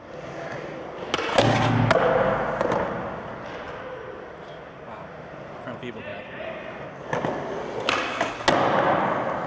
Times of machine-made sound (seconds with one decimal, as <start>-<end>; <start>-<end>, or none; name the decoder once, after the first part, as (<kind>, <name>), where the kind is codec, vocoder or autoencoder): none